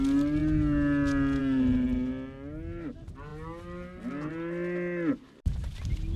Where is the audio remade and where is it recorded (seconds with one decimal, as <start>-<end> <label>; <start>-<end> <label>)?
0.0-6.2 recorded